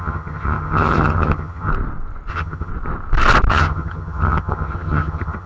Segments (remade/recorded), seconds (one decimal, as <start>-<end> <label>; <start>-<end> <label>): 0.0-1.7 remade; 1.7-2.3 recorded; 2.3-2.7 remade; 2.7-3.5 recorded; 3.5-5.5 remade